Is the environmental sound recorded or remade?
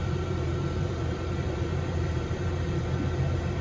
remade